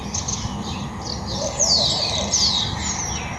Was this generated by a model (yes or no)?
no